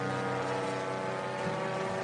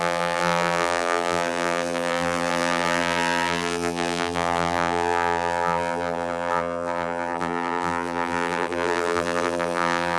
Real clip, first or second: first